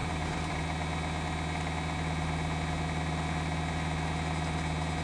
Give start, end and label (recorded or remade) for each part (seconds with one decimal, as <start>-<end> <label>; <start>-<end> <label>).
0.0-0.6 remade; 0.6-5.0 recorded